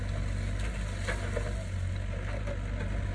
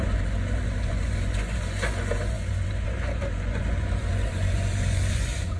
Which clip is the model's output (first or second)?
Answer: second